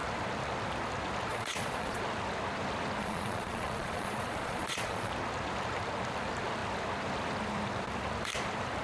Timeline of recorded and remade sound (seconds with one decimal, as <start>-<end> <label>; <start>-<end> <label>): 0.0-1.3 recorded; 1.3-2.0 remade; 2.0-3.0 recorded; 3.0-5.1 remade; 5.1-8.8 recorded